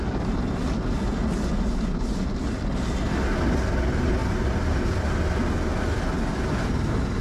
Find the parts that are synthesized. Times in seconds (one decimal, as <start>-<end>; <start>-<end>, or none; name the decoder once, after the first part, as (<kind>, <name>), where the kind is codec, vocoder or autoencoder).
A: none